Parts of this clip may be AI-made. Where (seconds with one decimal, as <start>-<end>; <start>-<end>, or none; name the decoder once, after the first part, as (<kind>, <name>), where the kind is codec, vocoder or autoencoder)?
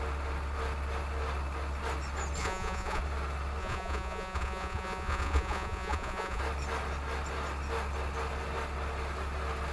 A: 2.4-3.0 (vocoder, Vocos); 3.6-6.4